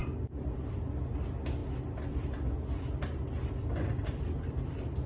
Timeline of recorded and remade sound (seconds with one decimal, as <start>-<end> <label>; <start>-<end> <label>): 0.0-1.1 remade; 1.1-1.6 recorded; 1.6-3.5 remade; 3.5-4.0 recorded; 4.0-5.1 remade